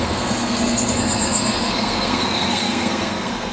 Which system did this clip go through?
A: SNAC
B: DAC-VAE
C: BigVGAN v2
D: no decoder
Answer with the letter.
A